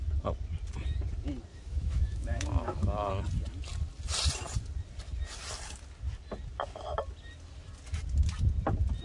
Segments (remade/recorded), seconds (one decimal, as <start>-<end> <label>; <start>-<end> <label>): 0.0-1.5 recorded; 1.5-3.1 remade; 3.1-9.0 recorded

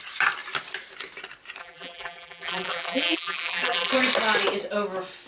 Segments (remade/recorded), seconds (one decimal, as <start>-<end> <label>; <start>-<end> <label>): 0.0-1.6 recorded; 1.6-3.9 remade; 3.9-5.3 recorded

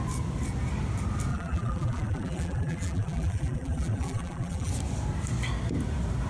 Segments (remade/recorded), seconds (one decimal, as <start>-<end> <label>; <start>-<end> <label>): 0.0-1.3 recorded; 1.3-4.7 remade; 4.7-6.3 recorded

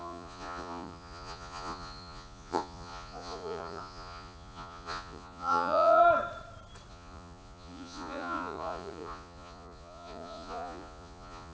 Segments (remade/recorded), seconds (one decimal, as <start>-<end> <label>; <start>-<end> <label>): 0.0-6.0 remade; 6.0-6.9 recorded; 6.9-11.5 remade